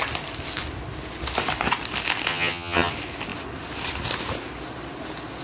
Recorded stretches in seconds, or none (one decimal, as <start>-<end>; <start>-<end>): 0.0-2.3; 2.9-5.4